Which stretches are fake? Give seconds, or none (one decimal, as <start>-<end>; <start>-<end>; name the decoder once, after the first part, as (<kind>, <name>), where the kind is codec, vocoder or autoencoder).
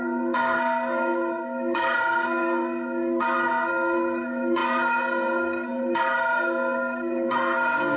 0.0-8.0 (codec, SNAC)